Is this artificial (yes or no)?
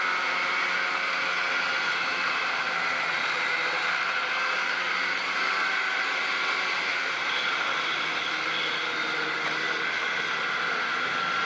no